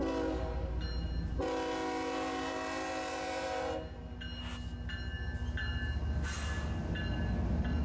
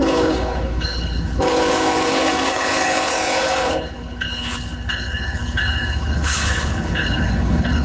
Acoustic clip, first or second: first